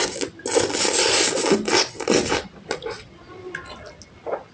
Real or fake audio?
real